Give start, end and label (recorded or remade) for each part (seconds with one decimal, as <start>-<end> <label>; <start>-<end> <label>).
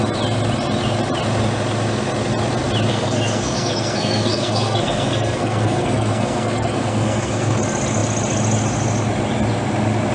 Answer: 0.0-2.9 recorded; 2.9-7.6 remade; 7.6-10.1 recorded